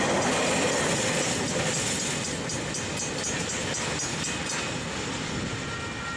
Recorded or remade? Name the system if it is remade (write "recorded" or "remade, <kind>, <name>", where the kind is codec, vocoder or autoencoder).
recorded